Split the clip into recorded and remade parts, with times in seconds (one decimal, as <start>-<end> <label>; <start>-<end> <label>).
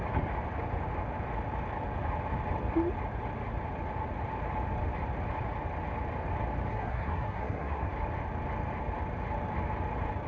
0.0-6.7 recorded; 6.7-7.9 remade; 7.9-10.3 recorded